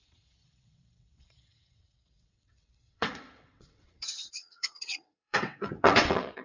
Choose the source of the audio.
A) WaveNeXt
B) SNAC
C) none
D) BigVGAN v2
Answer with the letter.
A